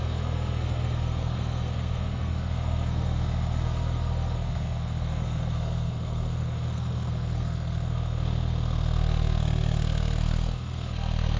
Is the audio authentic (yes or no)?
no